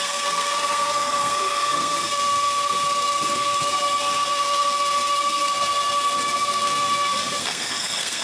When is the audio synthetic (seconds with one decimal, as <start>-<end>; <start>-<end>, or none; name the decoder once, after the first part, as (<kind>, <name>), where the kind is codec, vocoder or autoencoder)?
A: 0.0-8.2 (codec, SNAC)